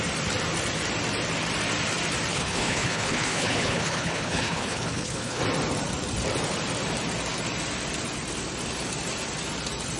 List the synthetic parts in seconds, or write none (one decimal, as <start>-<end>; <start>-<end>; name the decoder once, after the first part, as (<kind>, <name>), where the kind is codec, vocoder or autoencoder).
2.3-5.4 (codec, HILCodec)